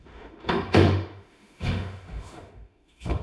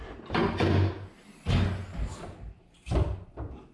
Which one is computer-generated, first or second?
first